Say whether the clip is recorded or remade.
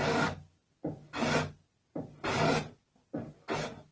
recorded